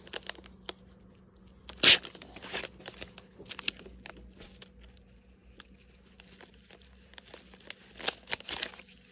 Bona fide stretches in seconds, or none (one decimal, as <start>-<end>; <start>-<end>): 0.0-9.1

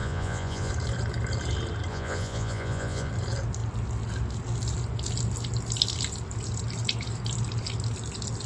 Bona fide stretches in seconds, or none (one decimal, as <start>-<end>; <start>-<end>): 0.7-1.9; 3.1-8.5

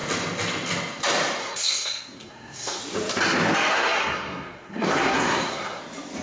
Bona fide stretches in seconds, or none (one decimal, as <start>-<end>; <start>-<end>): 0.0-1.4; 2.8-3.7; 5.8-6.2

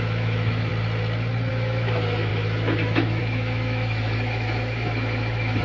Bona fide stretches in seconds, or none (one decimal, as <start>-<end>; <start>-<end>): 0.7-1.5

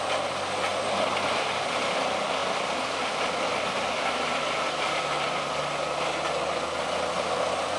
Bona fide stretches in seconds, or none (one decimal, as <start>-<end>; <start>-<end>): 0.0-0.7; 2.0-2.4; 3.7-7.8

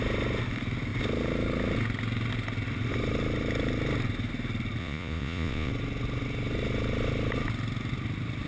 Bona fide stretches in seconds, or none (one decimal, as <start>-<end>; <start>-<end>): 0.0-4.8; 5.7-8.5

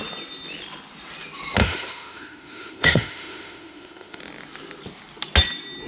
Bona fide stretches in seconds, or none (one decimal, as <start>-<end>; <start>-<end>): 0.0-1.6; 4.2-5.9